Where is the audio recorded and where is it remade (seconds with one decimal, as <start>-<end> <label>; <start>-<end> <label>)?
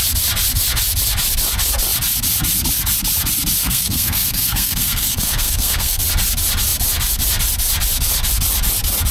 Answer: 0.0-3.6 recorded; 3.6-6.0 remade; 6.0-9.1 recorded